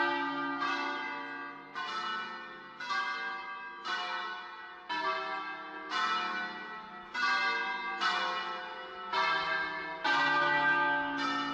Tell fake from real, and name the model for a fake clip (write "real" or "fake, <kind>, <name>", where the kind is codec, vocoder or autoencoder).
real